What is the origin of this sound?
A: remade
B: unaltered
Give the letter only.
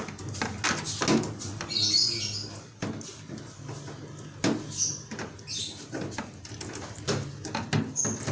B